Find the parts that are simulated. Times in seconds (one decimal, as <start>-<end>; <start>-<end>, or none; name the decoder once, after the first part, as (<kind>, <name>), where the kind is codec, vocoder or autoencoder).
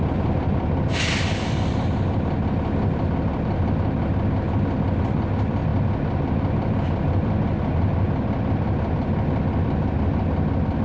none